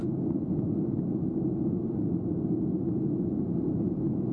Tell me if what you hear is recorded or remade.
recorded